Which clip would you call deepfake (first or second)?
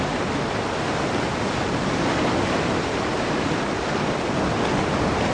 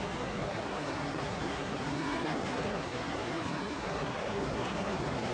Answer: second